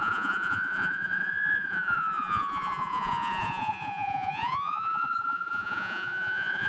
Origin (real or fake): fake